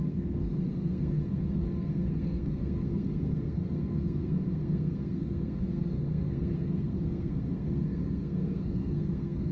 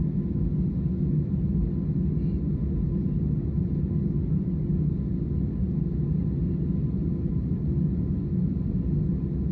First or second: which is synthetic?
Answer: first